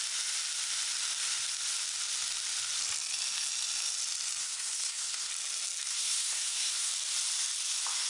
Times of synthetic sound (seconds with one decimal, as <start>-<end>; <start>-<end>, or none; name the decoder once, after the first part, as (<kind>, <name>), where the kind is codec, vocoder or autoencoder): 4.4-5.3 (codec, SNAC); 5.9-6.9